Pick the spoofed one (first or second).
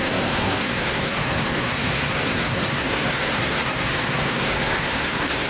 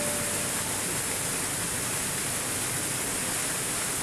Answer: first